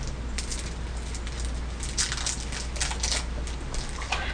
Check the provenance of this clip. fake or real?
real